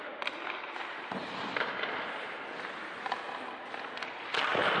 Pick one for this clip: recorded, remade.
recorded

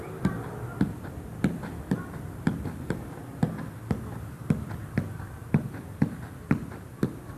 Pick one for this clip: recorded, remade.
recorded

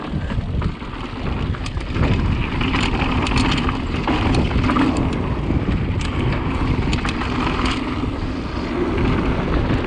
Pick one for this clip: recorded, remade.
recorded